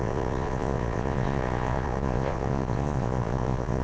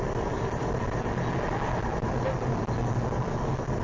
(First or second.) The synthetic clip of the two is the first